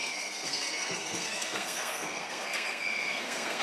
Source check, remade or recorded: remade